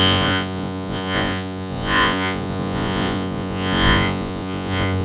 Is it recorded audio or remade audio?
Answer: remade